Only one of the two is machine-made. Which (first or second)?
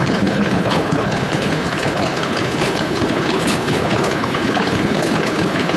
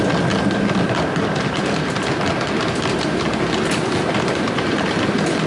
first